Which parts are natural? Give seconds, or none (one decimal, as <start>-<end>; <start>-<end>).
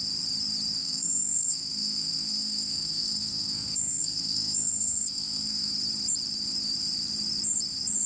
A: 0.0-0.8; 5.7-8.1